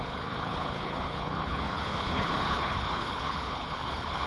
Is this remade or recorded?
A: remade